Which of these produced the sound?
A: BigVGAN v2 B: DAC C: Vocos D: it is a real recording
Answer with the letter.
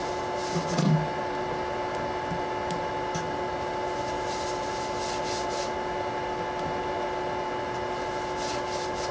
D